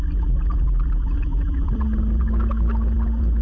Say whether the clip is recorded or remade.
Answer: recorded